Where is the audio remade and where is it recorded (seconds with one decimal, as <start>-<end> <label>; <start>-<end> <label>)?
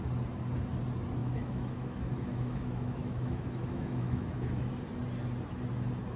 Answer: 0.0-1.2 recorded; 1.2-4.7 remade; 4.7-6.2 recorded